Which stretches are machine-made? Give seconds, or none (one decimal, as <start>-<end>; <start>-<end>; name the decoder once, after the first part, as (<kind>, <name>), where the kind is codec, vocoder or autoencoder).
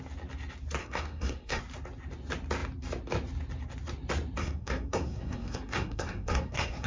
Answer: 0.8-1.6 (codec, SNAC); 4.4-6.9